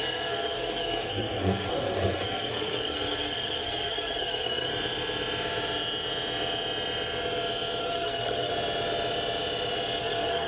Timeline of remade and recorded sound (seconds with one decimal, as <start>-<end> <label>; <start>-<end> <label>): 0.0-4.7 remade; 4.7-7.8 recorded; 7.8-8.5 remade; 8.5-10.0 recorded; 10.0-10.5 remade